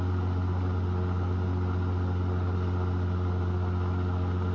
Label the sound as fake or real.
real